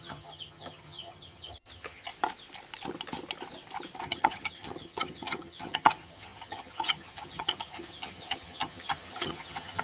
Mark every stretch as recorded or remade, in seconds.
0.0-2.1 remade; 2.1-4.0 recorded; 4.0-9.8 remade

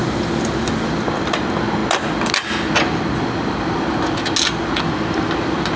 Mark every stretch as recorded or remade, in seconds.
0.0-5.8 recorded

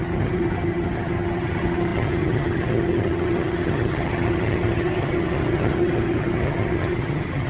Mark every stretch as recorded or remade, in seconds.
0.0-7.5 remade

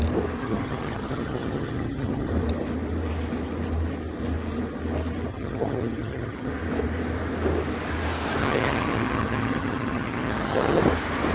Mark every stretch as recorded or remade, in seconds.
0.0-0.4 recorded; 0.4-2.3 remade; 2.3-5.3 recorded; 5.3-6.5 remade; 6.5-8.4 recorded; 8.4-10.8 remade; 10.8-11.3 recorded

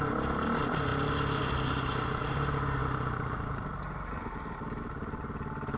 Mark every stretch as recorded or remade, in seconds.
0.0-5.8 recorded